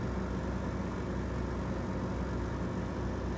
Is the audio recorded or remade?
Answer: recorded